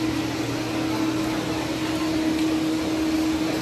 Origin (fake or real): real